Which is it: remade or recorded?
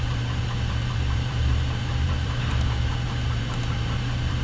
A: remade